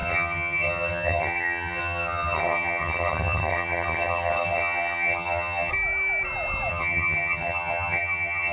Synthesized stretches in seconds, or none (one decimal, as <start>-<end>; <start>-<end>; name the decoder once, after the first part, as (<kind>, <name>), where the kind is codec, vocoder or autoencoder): 0.0-5.7 (vocoder, HiFi-GAN); 6.7-8.5